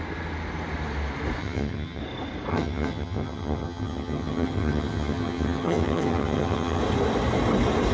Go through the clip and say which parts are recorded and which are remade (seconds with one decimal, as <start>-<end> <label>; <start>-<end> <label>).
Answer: 0.0-1.4 recorded; 1.4-2.0 remade; 2.0-2.5 recorded; 2.5-6.8 remade; 6.8-7.9 recorded